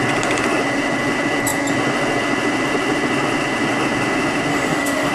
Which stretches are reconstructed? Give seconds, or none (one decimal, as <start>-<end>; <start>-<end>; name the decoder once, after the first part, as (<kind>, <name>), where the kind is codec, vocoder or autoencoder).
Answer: 4.5-5.1 (autoencoder, DAC-VAE)